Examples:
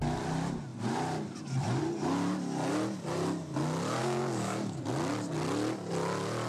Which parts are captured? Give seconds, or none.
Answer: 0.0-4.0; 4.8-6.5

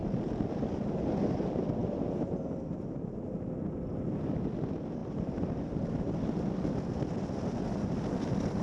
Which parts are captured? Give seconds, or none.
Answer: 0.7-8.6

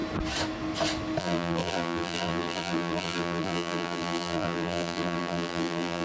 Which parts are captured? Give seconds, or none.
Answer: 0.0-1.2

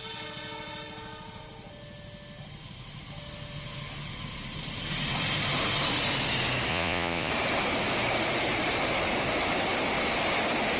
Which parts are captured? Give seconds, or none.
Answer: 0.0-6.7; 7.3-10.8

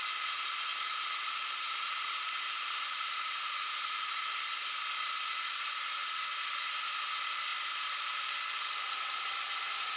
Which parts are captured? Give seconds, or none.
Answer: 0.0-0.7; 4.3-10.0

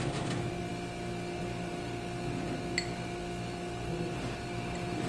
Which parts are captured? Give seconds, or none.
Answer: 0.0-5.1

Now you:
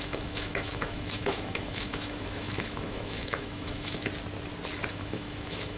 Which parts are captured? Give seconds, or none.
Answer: 4.1-4.9

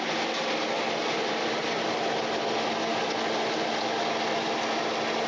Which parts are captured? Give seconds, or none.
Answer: 0.0-5.3